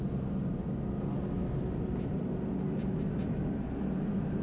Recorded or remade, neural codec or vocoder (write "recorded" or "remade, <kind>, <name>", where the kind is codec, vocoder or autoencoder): recorded